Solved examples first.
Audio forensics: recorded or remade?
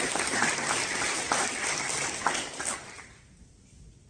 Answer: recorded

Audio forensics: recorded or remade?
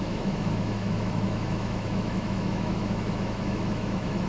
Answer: remade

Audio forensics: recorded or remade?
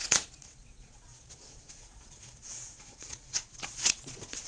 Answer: remade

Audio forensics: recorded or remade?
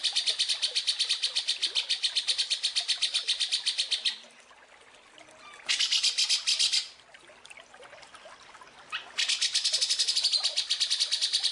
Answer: recorded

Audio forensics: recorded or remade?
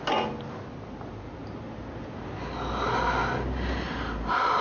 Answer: recorded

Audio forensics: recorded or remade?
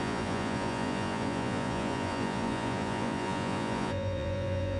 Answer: remade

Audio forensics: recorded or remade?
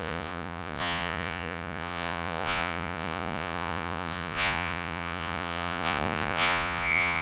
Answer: remade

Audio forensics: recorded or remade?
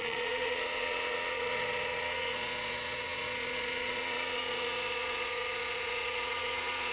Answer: remade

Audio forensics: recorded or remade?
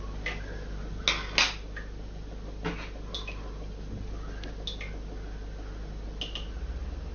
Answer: recorded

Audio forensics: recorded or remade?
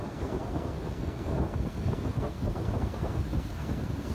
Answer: remade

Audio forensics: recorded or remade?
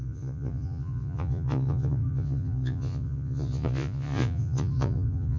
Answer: remade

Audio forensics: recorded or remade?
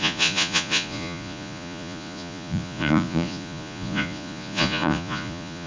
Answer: remade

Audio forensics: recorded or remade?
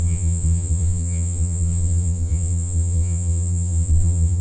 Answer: remade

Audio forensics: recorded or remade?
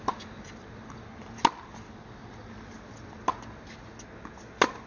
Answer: recorded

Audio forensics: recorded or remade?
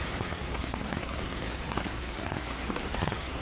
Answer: remade